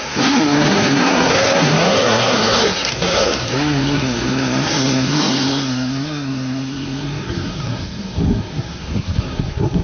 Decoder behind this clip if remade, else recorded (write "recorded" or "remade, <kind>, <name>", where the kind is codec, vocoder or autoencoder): remade, codec, SNAC